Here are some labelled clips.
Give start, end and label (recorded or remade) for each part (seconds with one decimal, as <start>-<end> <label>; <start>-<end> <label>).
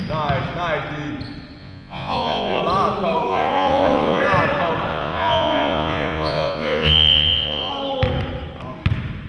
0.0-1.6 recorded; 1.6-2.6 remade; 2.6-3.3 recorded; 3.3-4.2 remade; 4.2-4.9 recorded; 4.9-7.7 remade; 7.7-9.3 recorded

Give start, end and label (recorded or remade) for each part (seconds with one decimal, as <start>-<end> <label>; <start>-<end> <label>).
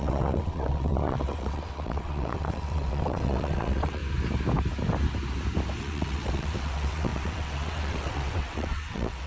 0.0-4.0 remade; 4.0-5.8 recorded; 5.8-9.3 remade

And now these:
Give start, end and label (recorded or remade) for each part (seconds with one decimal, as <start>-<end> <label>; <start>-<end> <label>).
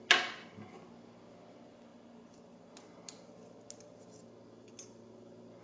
0.0-5.6 recorded